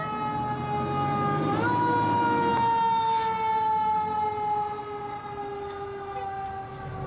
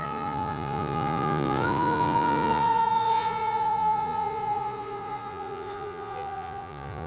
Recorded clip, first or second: first